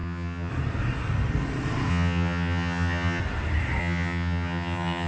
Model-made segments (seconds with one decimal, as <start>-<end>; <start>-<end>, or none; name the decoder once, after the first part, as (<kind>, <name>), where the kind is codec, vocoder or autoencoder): 0.0-0.5 (vocoder, HiFi-GAN); 1.9-3.2; 3.8-5.1